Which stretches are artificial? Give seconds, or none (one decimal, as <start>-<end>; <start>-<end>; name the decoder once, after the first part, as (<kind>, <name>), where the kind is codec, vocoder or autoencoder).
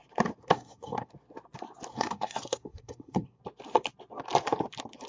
0.4-1.1 (codec, SNAC); 1.9-3.4